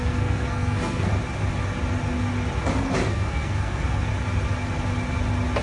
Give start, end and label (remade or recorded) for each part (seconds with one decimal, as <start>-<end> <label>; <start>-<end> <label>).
0.0-1.1 remade; 1.1-3.1 recorded; 3.1-4.1 remade; 4.1-5.6 recorded